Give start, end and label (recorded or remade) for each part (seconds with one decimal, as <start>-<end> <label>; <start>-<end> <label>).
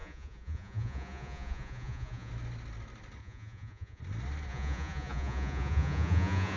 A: 0.0-2.3 remade; 2.3-3.2 recorded; 3.2-4.0 remade; 4.0-4.5 recorded; 4.5-6.6 remade